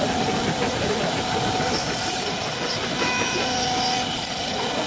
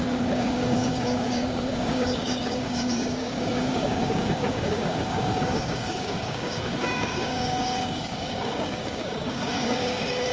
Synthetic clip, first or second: second